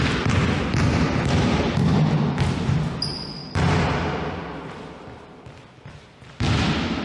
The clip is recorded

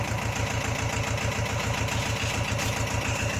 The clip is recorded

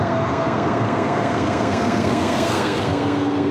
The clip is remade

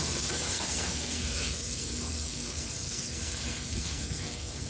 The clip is remade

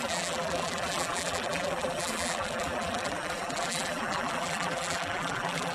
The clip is remade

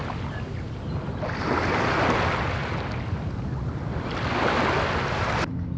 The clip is recorded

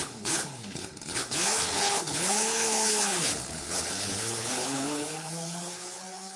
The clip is remade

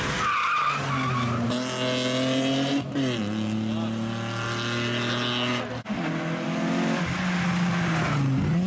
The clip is recorded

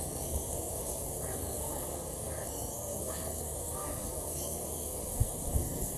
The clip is remade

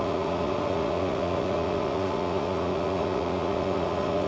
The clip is remade